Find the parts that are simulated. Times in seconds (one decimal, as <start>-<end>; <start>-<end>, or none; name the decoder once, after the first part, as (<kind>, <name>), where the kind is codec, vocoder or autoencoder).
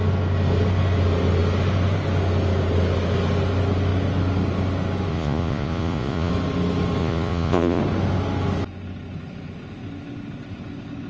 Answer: 5.1-6.3 (vocoder, Vocos); 7.0-7.8